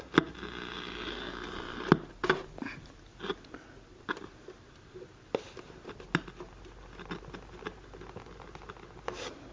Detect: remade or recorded recorded